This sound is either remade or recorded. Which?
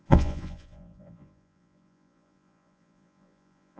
remade